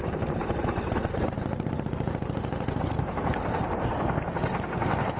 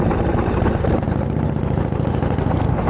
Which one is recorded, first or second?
second